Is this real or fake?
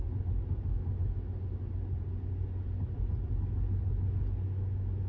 real